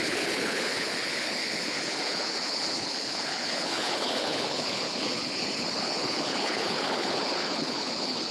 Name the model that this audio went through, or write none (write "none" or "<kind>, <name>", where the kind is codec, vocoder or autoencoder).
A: codec, HILCodec